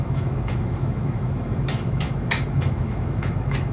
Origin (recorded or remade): remade